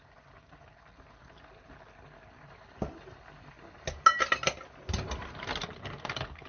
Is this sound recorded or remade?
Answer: recorded